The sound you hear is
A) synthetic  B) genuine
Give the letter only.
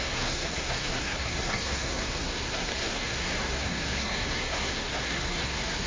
A